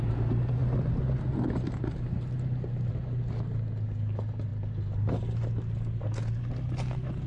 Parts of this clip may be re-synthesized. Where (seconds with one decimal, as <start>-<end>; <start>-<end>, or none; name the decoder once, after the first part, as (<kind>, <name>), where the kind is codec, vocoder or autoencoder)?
none